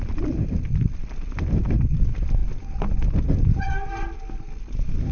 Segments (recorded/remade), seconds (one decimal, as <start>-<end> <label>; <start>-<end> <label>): 0.0-5.1 recorded